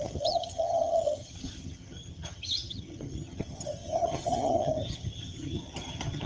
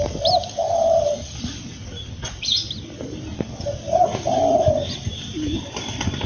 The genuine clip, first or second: second